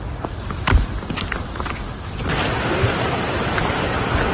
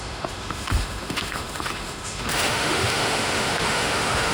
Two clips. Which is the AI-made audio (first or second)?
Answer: second